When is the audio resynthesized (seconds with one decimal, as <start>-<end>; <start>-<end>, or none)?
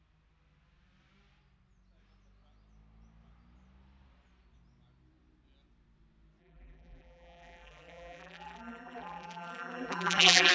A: 6.4-10.5